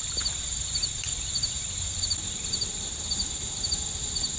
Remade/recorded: recorded